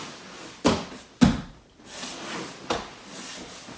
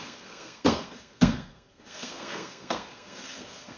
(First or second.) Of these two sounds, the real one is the first